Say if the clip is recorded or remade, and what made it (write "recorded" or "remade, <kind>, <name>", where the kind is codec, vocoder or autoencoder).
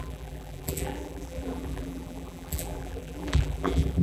remade, vocoder, BigVGAN v2